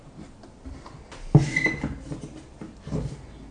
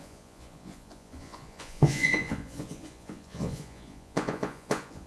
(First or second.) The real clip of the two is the first